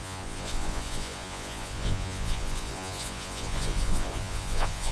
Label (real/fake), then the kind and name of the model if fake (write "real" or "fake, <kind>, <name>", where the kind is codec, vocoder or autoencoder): fake, vocoder, Vocos